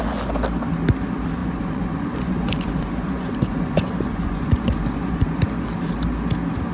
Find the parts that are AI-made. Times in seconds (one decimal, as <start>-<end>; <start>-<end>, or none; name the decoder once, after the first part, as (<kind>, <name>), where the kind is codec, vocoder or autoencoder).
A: 1.4-5.4 (vocoder, Vocos)